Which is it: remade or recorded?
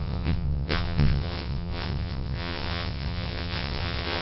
remade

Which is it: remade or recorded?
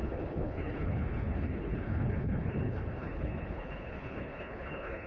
remade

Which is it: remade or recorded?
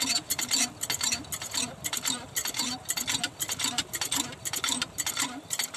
recorded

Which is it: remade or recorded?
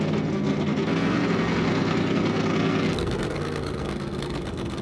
remade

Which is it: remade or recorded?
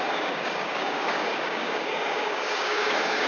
remade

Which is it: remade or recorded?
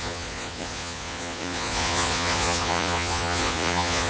remade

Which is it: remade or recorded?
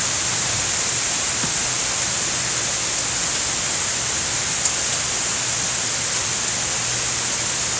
recorded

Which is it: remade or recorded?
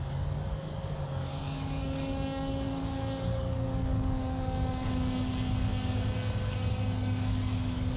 remade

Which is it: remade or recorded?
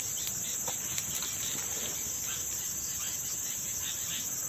recorded